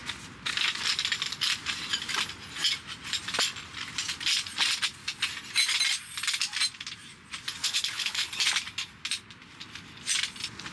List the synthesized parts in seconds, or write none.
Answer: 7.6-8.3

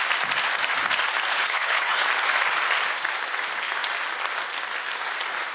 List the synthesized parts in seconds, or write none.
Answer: 1.3-2.0